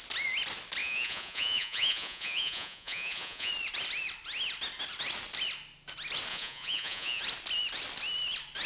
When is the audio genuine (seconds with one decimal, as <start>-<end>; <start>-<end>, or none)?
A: 0.0-0.8; 3.5-6.3; 7.2-8.7

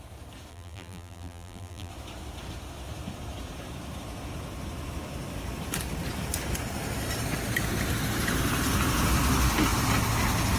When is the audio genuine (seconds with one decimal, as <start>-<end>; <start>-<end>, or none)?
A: 0.0-0.5; 1.9-10.6

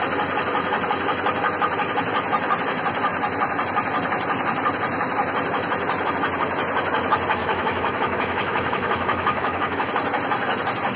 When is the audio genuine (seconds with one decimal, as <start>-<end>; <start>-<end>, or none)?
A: 0.0-7.4; 9.9-11.0